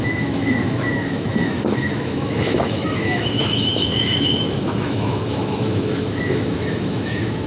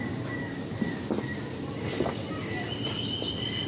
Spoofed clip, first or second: first